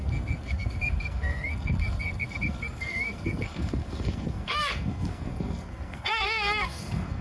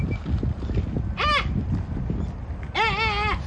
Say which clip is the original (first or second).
second